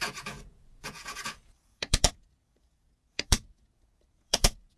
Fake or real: fake